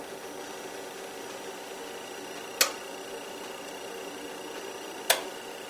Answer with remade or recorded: recorded